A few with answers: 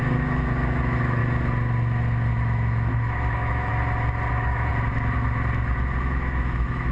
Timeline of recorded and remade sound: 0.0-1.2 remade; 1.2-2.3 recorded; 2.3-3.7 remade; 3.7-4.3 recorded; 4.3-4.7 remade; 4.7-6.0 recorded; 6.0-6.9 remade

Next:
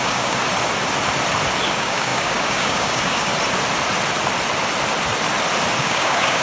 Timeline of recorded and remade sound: 0.0-0.4 remade; 0.4-1.7 recorded; 1.7-3.3 remade; 3.3-5.8 recorded; 5.8-6.4 remade

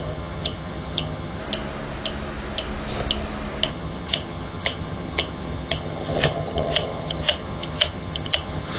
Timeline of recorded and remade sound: 0.0-1.4 remade; 1.4-3.7 recorded; 3.7-8.8 remade

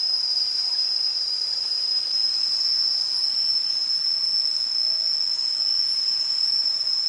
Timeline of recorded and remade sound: 0.0-4.3 remade; 4.3-5.8 recorded; 5.8-7.1 remade

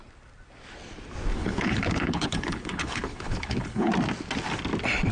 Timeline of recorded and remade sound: 0.0-1.3 recorded; 1.3-3.9 remade; 3.9-5.1 recorded

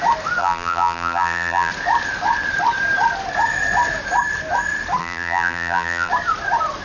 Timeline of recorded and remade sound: 0.0-0.4 recorded; 0.4-1.7 remade; 1.7-5.0 recorded; 5.0-6.1 remade; 6.1-6.8 recorded